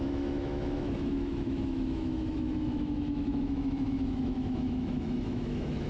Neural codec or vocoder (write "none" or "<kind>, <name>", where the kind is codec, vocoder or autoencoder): autoencoder, DAC-VAE